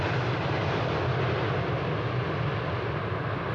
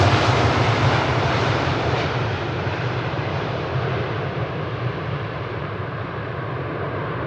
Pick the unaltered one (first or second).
first